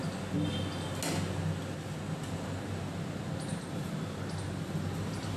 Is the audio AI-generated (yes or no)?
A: no